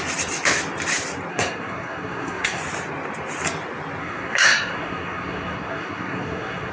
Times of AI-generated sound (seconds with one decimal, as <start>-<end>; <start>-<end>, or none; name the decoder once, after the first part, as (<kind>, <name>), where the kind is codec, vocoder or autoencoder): 1.3-2.6 (codec, SNAC); 4.0-6.7